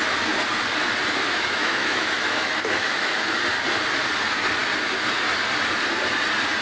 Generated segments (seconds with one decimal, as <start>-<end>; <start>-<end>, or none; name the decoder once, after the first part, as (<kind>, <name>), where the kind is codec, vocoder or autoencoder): 1.2-3.4 (autoencoder, DAC-VAE)